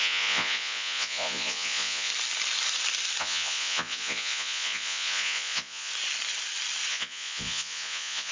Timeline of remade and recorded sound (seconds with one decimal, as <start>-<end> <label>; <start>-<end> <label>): 0.0-2.1 remade; 2.1-3.2 recorded; 3.2-5.9 remade; 5.9-6.9 recorded; 6.9-8.3 remade